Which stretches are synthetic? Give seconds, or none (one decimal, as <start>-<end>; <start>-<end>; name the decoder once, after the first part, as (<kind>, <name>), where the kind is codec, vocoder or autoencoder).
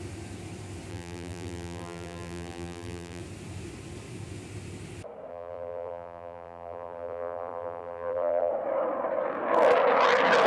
0.9-3.2 (vocoder, BigVGAN v2); 5.3-8.5